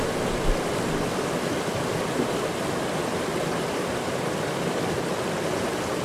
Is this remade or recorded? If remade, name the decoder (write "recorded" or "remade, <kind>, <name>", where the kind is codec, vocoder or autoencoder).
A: recorded